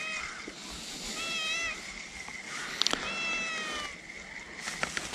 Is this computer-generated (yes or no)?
no